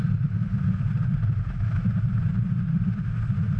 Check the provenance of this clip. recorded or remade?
recorded